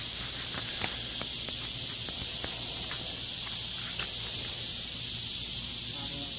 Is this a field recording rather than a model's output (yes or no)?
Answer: yes